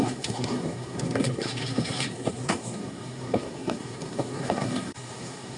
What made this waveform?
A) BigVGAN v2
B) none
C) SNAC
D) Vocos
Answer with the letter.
C